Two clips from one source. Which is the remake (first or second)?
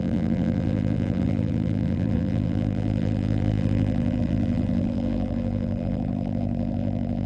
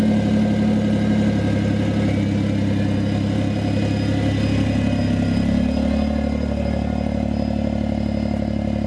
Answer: first